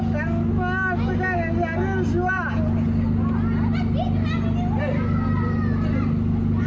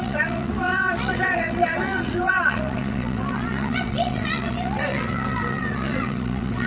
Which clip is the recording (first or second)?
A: first